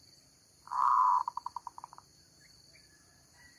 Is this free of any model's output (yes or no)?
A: no